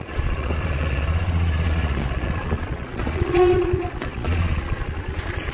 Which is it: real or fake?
fake